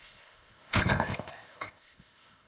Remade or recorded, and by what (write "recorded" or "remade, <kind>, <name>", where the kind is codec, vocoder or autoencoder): remade, codec, ZipCodec